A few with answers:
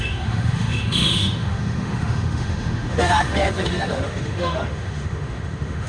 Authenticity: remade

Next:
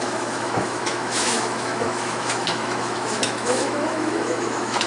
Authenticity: remade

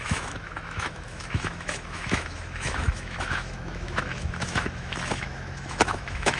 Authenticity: remade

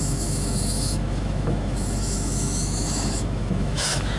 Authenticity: remade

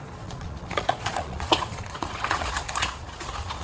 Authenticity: remade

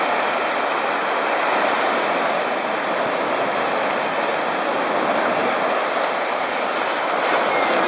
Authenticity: recorded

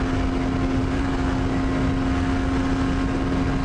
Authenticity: recorded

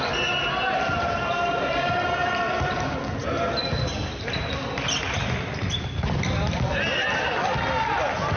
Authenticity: recorded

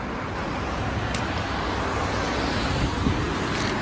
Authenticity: recorded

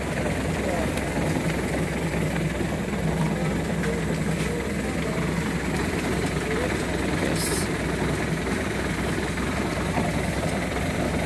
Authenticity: recorded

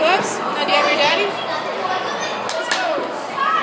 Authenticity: recorded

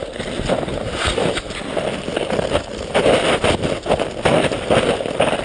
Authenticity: recorded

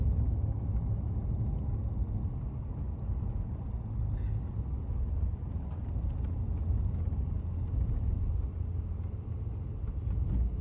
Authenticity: recorded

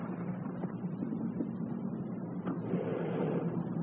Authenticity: remade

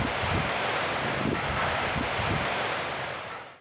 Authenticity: remade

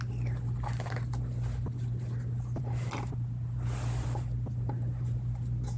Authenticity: recorded